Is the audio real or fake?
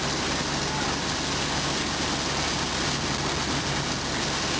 real